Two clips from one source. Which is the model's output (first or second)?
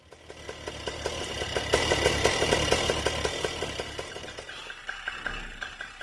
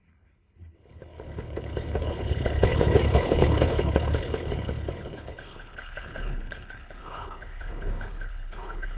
second